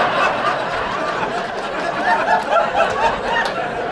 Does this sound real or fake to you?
real